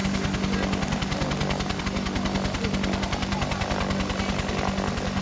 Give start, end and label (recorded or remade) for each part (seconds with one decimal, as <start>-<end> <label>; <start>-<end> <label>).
0.0-5.2 recorded